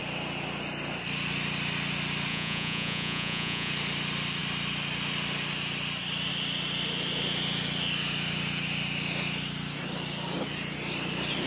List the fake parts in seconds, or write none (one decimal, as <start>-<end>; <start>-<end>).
2.3-3.7